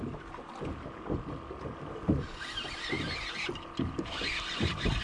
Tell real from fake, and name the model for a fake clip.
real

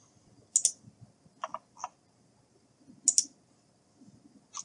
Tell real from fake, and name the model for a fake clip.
real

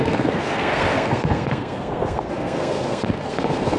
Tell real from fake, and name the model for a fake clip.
fake, codec, SNAC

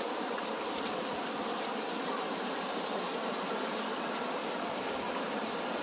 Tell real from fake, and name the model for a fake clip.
real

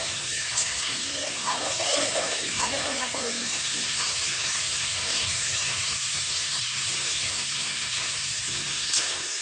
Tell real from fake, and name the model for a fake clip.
fake, codec, SNAC